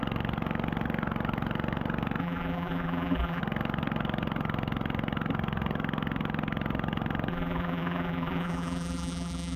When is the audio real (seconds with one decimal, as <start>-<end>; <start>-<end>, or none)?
0.0-2.2; 3.4-7.3